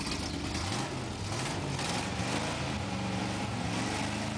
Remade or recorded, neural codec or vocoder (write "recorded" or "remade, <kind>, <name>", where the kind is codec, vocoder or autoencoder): recorded